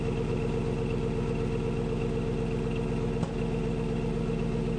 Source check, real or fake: real